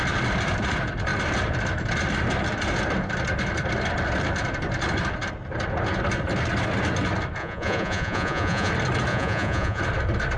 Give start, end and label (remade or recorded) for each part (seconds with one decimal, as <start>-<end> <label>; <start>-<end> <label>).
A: 0.0-7.4 recorded; 7.4-8.7 remade; 8.7-9.1 recorded; 9.1-9.8 remade; 9.8-10.4 recorded